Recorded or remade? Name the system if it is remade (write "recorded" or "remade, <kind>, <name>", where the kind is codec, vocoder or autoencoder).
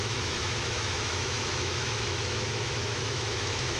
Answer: remade, autoencoder, DAC-VAE